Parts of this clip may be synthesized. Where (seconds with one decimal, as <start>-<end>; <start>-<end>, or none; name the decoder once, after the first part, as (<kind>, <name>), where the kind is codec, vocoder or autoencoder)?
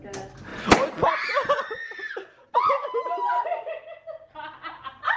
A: none